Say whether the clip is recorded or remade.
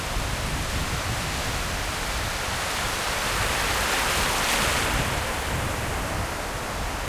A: recorded